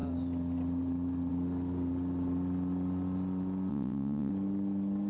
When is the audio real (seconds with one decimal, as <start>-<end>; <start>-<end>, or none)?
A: 0.0-3.7; 4.3-5.1